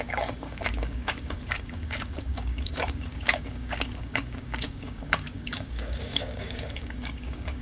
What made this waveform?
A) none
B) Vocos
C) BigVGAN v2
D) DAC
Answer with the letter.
D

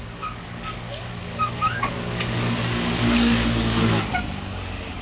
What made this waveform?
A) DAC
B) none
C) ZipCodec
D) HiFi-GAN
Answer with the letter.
A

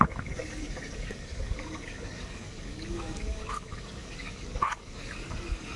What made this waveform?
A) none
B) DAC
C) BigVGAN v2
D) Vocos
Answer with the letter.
B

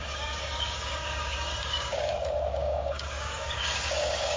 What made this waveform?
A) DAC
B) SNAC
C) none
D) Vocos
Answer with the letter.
A